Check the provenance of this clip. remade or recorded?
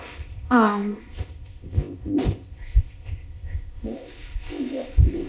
remade